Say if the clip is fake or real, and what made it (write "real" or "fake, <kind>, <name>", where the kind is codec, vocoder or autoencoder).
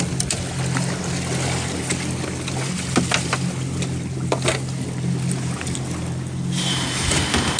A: real